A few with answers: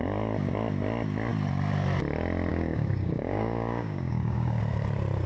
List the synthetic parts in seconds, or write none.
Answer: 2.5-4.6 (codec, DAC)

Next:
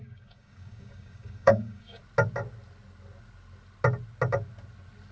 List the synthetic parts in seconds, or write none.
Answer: 0.0-2.0 (codec, DAC)

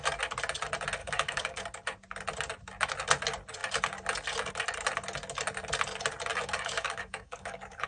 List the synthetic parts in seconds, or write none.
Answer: 1.0-1.6 (codec, DAC); 6.3-7.9

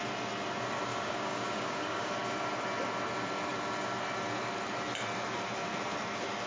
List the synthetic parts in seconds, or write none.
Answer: 0.9-2.1 (codec, DAC)